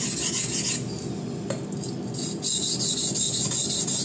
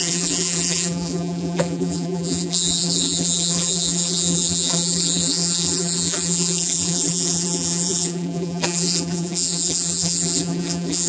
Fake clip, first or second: second